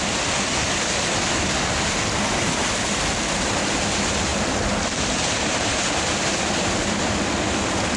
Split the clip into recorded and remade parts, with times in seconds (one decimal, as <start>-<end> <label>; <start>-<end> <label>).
0.0-8.0 recorded